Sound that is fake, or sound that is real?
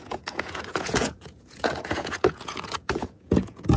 fake